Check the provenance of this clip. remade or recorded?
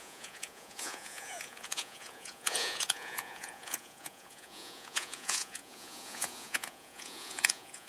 remade